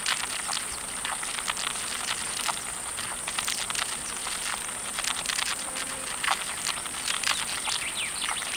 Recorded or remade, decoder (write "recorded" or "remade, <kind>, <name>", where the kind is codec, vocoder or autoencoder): recorded